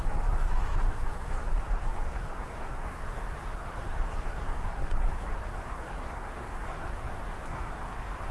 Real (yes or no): no